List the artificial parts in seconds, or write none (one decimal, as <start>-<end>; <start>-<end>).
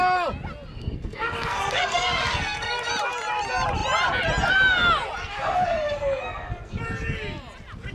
0.7-2.9; 5.2-6.8